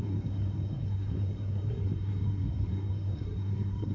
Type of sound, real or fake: fake